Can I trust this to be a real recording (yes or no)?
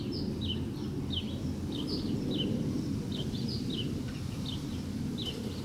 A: yes